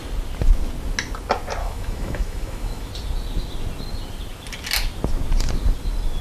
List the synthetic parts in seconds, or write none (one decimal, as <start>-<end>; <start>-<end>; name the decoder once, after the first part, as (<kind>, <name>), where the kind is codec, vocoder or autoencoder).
1.6-2.9 (autoencoder, DAC-VAE)